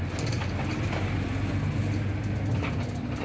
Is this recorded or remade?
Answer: recorded